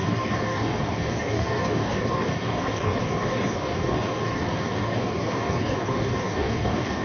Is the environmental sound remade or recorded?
remade